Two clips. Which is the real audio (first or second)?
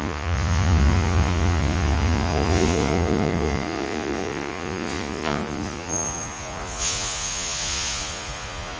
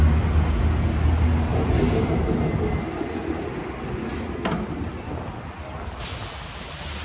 second